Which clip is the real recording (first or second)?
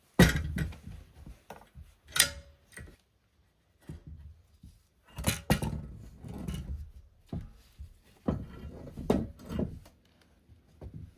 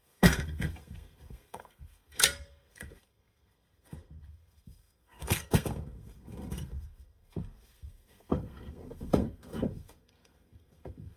first